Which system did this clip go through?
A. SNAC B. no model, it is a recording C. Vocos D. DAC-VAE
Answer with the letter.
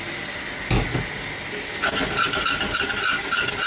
B